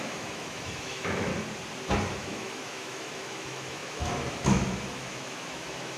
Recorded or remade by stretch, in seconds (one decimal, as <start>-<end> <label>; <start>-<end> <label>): 0.0-1.3 remade; 1.3-2.2 recorded; 2.2-6.0 remade